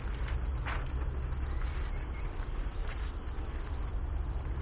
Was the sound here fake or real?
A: real